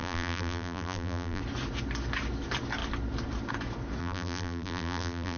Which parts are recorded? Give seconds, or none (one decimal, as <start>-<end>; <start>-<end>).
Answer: 1.4-4.0